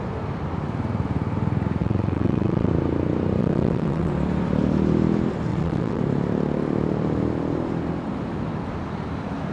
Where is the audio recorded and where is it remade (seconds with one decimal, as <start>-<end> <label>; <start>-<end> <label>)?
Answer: 0.0-1.8 recorded; 1.8-2.7 remade; 2.7-3.4 recorded; 3.4-4.1 remade; 4.1-5.5 recorded; 5.5-6.0 remade; 6.0-9.5 recorded

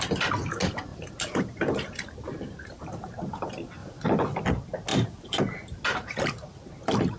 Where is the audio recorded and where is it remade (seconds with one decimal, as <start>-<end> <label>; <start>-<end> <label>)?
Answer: 0.0-0.9 recorded; 0.9-3.1 remade; 3.1-3.8 recorded; 3.8-4.5 remade; 4.5-4.9 recorded; 4.9-5.4 remade; 5.4-7.2 recorded

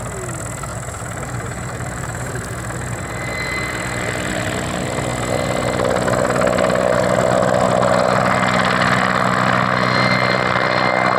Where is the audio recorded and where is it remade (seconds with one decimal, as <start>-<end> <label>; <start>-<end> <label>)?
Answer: 0.0-0.7 recorded; 0.7-2.3 remade; 2.3-11.2 recorded

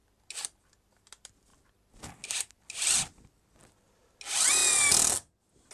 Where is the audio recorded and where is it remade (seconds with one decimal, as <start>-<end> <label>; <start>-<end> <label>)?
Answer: 0.0-5.7 recorded

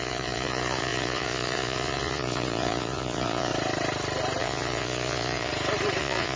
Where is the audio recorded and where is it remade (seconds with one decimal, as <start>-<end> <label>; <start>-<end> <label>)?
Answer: 0.0-3.5 remade; 3.5-4.4 recorded; 4.4-5.5 remade; 5.5-6.0 recorded; 6.0-6.4 remade

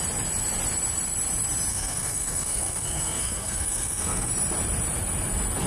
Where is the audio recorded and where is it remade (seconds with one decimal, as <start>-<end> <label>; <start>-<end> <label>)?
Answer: 0.0-1.7 recorded; 1.7-4.3 remade; 4.3-5.7 recorded